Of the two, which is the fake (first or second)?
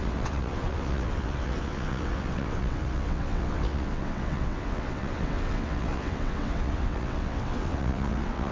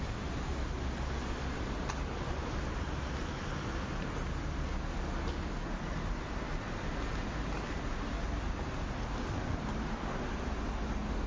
first